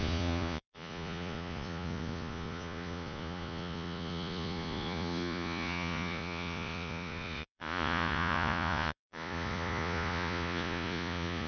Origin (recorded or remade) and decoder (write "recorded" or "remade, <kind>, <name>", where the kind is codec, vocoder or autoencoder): remade, vocoder, Vocos